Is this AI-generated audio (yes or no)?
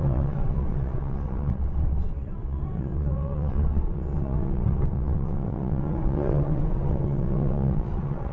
yes